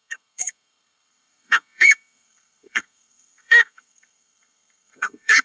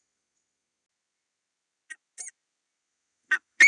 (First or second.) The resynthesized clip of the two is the first